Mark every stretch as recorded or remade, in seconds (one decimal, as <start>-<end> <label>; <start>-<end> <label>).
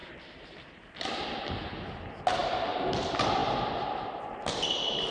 0.0-5.1 recorded